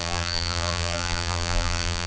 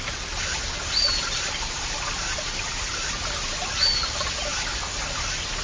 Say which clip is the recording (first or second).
second